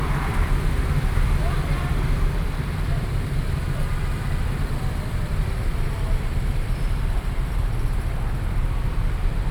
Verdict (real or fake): fake